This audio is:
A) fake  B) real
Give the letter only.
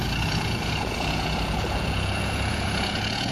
A